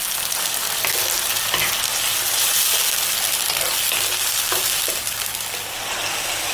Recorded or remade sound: recorded